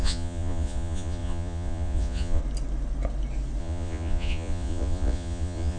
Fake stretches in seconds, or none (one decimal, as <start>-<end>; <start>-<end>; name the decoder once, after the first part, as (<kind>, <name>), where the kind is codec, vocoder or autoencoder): 0.0-2.4 (vocoder, Vocos); 3.6-5.8